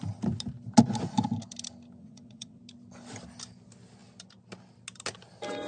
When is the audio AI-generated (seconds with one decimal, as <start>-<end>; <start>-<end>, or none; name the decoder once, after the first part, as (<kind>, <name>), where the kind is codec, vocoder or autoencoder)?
2.0-2.6 (vocoder, WaveNeXt)